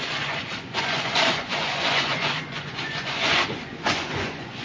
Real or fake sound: fake